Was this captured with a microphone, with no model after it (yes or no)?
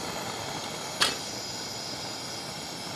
yes